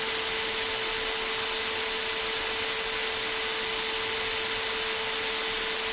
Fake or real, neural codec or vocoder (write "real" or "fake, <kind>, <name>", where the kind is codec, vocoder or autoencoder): real